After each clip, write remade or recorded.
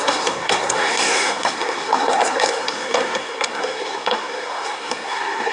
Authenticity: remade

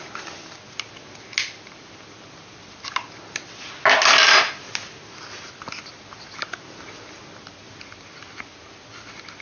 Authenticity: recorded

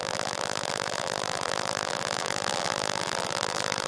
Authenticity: remade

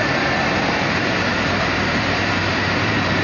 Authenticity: remade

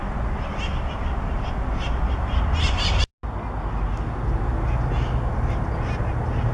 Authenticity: recorded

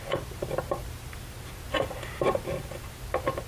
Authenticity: recorded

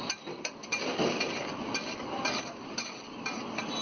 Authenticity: recorded